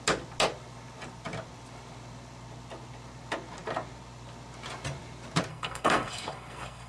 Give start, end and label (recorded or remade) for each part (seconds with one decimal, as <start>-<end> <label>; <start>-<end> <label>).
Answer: 0.0-5.5 recorded; 5.5-6.9 remade